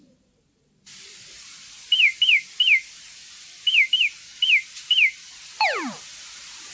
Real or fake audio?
fake